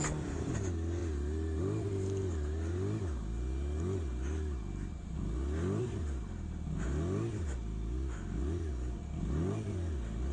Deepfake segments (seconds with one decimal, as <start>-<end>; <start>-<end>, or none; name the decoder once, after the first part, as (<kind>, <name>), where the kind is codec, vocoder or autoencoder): none